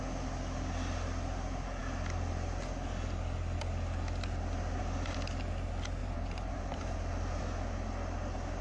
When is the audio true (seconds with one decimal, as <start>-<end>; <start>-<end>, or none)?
0.0-6.0; 7.4-8.6